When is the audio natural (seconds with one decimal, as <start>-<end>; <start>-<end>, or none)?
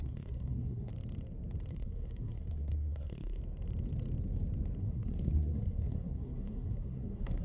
0.9-1.7; 3.4-4.8